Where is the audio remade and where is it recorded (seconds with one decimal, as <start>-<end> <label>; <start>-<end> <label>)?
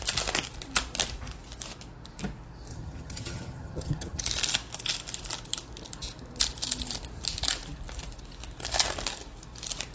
0.0-2.7 recorded; 2.7-4.2 remade; 4.2-9.9 recorded